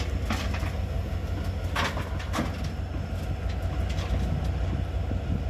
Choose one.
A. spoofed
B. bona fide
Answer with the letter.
B